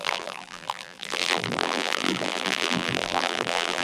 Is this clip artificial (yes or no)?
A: yes